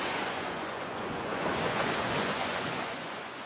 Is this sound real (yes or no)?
no